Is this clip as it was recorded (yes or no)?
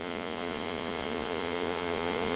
no